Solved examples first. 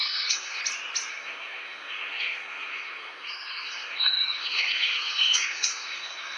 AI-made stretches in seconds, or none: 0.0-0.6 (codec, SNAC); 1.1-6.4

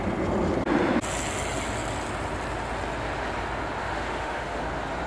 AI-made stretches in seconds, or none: 3.8-4.6 (autoencoder, DAC-VAE)

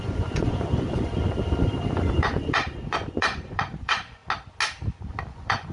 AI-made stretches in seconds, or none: 0.0-1.1 (vocoder, Vocos); 2.0-4.2; 5.3-5.7

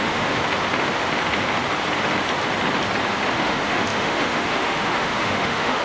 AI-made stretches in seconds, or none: 0.0-0.4 (autoencoder, DAC-VAE); 3.3-5.8

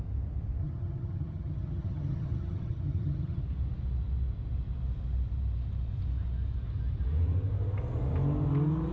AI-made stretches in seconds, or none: 0.6-3.4 (vocoder, HiFi-GAN)

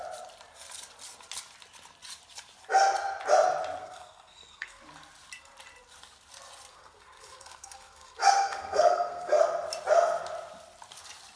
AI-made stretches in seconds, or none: 3.8-4.8 (codec, SNAC); 6.7-9.4